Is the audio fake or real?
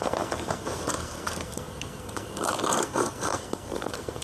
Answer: fake